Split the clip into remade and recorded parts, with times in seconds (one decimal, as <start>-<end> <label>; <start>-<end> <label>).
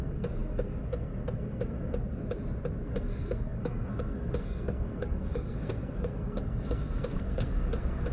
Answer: 0.0-2.2 remade; 2.2-2.7 recorded; 2.7-8.1 remade